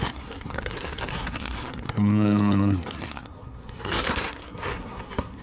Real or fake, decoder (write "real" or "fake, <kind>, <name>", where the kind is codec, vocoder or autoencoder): fake, codec, SNAC